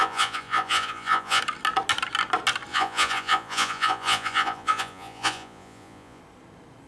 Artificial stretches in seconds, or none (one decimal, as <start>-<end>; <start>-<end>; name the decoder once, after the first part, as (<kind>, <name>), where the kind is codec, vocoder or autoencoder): 0.0-1.4 (vocoder, Vocos); 2.7-6.2